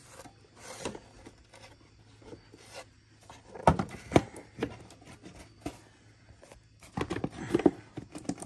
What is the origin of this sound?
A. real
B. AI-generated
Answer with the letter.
A